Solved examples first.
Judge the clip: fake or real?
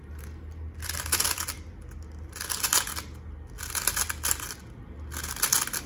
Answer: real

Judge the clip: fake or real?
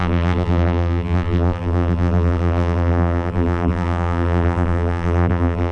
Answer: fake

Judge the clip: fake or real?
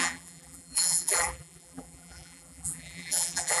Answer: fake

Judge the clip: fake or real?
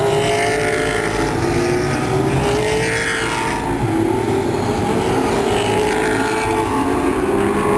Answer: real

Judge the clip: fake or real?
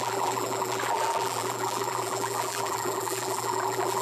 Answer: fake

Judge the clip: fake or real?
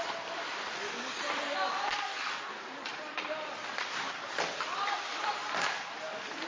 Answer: fake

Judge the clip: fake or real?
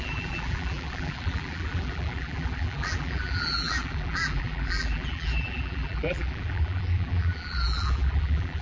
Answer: fake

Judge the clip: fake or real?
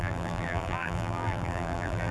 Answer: fake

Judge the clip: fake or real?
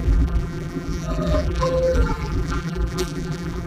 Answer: fake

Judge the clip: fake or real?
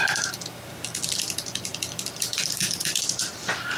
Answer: fake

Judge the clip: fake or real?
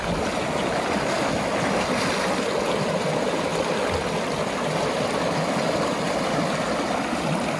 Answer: real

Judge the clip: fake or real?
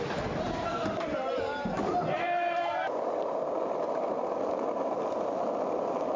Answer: fake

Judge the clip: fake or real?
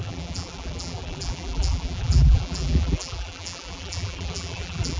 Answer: fake